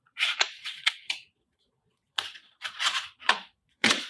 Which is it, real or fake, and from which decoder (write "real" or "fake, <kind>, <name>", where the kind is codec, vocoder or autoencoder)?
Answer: fake, vocoder, Vocos